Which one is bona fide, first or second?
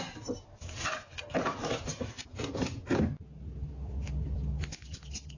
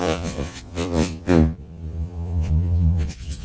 first